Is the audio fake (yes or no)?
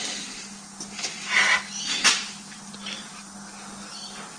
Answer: no